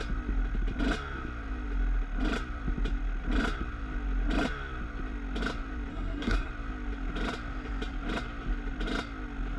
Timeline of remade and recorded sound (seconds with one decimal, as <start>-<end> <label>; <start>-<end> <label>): 0.0-5.9 recorded; 5.9-6.5 remade; 6.5-9.6 recorded